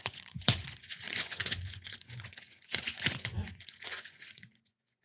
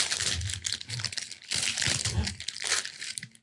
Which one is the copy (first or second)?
first